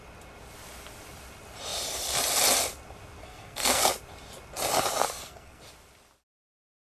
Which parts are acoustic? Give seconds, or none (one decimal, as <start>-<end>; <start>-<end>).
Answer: 0.0-3.2; 3.9-5.0; 5.6-6.9